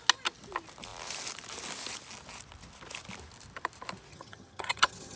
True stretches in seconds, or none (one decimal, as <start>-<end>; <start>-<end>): 0.0-4.1

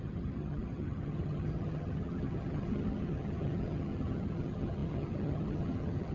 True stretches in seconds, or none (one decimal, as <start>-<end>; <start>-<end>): none

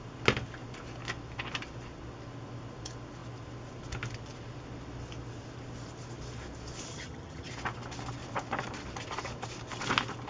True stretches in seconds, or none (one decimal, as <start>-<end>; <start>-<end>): 0.0-6.9; 7.5-10.3

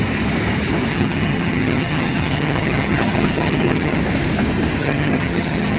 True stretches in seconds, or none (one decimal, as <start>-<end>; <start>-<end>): 0.0-0.9; 4.0-4.8

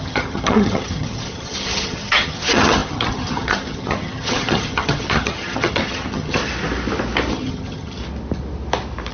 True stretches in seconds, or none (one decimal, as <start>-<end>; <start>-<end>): 6.4-7.3; 8.0-9.1